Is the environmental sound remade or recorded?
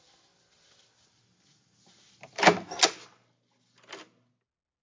recorded